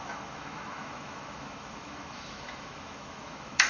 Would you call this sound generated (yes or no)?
yes